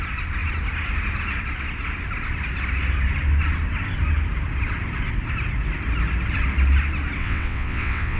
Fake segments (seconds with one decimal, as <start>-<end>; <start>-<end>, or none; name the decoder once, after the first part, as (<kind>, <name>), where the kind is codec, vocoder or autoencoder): 7.2-8.2 (vocoder, WaveNeXt)